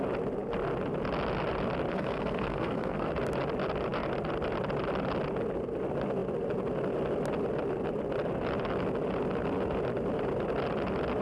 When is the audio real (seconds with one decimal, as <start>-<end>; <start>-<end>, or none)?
0.0-1.9; 3.1-11.2